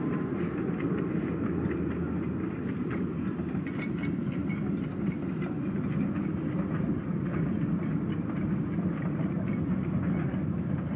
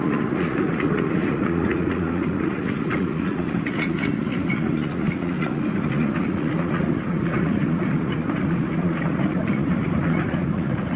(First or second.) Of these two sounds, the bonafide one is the first